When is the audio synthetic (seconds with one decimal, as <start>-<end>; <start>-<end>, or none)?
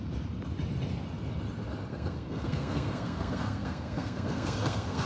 1.9-5.1